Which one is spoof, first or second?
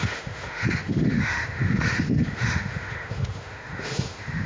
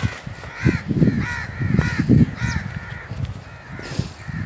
first